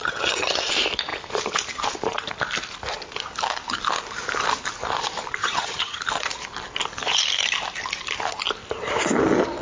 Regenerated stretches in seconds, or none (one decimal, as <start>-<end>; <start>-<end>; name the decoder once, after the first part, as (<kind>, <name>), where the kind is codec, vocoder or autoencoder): 0.0-0.7 (vocoder, HiFi-GAN); 5.4-6.0